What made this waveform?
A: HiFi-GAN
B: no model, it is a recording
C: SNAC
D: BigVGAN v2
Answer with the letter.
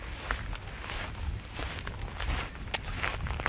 B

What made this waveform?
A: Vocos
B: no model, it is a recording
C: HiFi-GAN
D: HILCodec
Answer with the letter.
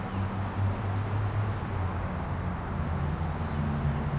B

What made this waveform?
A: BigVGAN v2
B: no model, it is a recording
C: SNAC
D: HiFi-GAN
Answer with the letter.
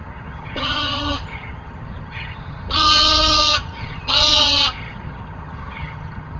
D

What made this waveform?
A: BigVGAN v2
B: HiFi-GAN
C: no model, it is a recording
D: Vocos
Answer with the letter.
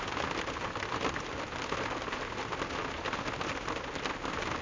C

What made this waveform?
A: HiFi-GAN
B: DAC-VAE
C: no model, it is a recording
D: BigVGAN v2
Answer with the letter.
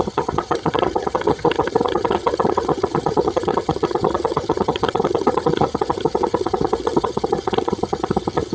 A